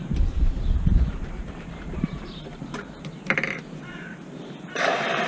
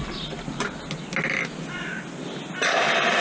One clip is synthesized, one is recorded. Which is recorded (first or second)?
second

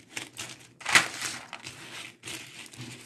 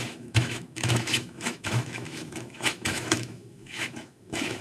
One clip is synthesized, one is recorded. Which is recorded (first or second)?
first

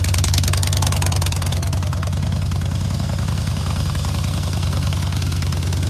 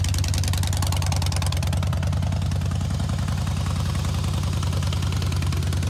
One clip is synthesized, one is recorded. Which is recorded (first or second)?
second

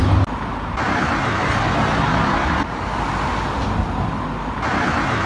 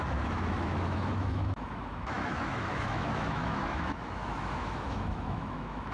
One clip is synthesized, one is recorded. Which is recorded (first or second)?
first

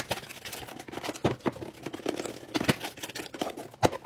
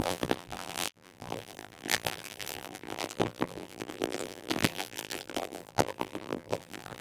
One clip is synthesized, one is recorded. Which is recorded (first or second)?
first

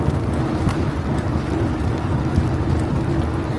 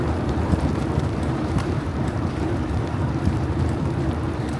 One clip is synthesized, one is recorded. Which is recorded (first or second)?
first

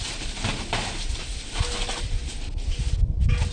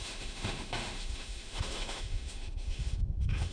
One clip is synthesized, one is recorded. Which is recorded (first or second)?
first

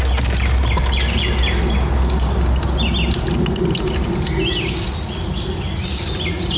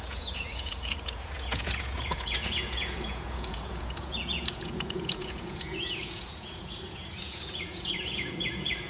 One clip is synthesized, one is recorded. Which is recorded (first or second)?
first